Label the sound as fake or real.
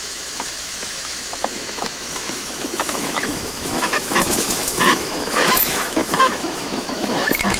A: fake